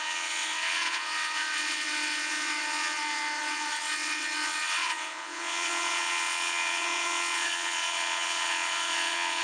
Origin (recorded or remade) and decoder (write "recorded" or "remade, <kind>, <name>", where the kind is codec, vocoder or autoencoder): remade, vocoder, WaveNeXt